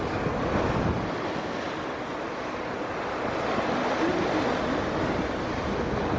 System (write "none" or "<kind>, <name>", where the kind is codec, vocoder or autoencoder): none